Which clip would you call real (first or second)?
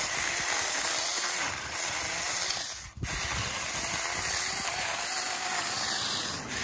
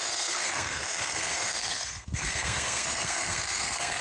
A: first